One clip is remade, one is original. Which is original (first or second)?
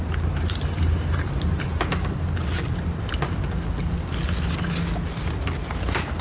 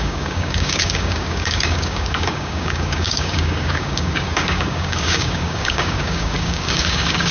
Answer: first